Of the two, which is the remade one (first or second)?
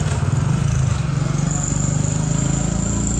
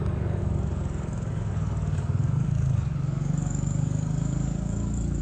second